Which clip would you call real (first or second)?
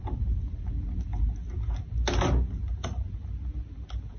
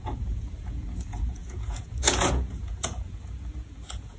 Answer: first